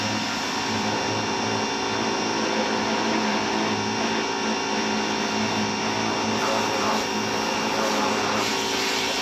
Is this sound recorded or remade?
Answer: recorded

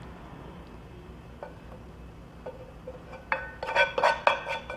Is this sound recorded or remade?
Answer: recorded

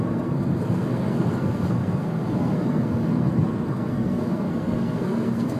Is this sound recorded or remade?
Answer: remade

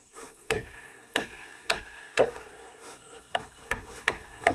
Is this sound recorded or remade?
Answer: remade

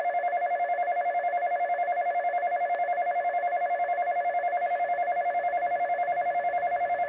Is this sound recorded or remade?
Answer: recorded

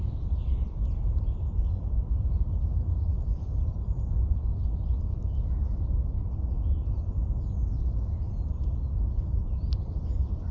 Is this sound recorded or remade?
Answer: recorded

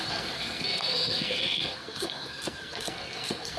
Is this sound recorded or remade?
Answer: remade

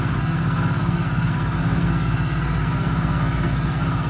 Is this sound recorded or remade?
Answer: remade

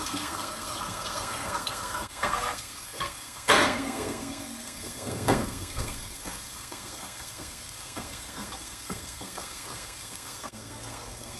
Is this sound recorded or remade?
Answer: remade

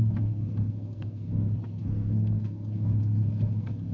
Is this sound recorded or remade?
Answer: remade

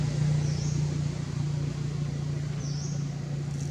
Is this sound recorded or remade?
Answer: recorded